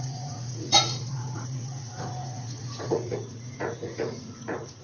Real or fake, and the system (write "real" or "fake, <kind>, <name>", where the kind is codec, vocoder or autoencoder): fake, vocoder, Vocos